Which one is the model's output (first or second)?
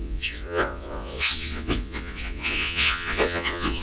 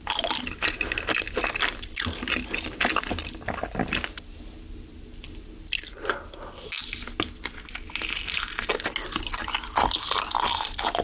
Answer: first